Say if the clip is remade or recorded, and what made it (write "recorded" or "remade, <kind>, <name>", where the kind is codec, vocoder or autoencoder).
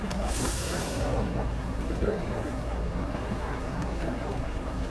remade, codec, SNAC